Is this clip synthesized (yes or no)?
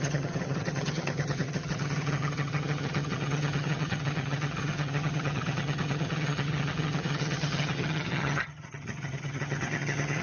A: yes